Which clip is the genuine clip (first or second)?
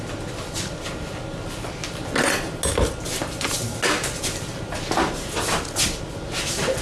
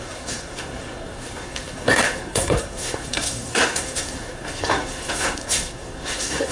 first